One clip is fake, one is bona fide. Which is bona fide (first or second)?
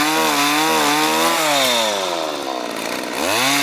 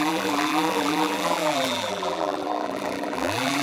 first